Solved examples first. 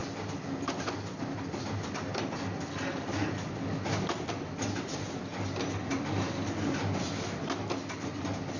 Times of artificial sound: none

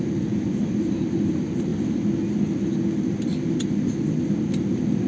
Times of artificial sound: none

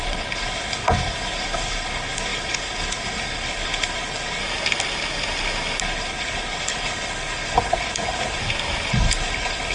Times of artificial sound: 0.0-4.4; 5.8-8.4; 8.9-9.7